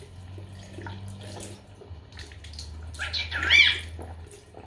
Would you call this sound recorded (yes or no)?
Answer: yes